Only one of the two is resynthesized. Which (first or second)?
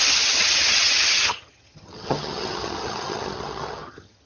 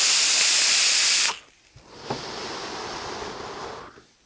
first